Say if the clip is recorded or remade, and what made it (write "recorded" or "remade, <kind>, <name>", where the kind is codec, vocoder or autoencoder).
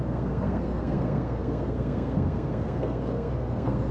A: remade, codec, SNAC